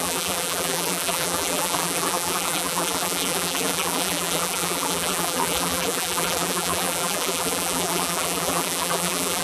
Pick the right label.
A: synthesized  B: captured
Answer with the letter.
A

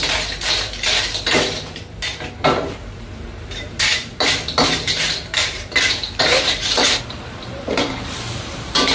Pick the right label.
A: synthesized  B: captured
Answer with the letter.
A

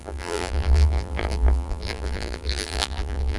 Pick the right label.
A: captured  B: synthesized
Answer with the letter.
B